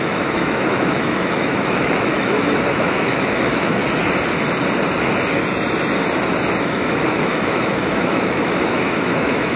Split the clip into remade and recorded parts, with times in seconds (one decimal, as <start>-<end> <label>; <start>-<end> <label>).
0.0-3.8 remade; 3.8-6.6 recorded; 6.6-9.6 remade